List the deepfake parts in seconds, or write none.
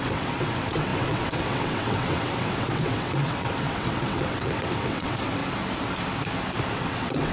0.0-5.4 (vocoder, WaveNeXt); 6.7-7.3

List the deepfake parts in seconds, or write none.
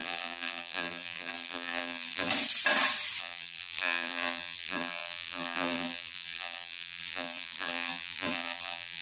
0.0-2.3 (vocoder, BigVGAN v2); 3.2-9.0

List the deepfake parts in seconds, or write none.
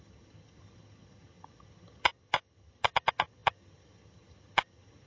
0.0-5.1 (vocoder, HiFi-GAN)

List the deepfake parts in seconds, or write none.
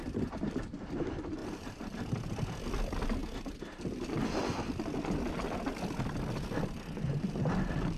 1.4-2.2 (vocoder, BigVGAN v2)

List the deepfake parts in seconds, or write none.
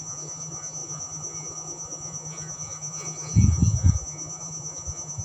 0.0-5.2 (vocoder, Vocos)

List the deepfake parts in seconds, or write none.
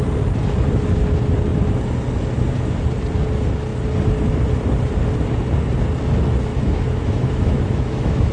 6.5-8.3 (autoencoder, DAC-VAE)